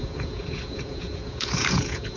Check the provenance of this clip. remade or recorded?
remade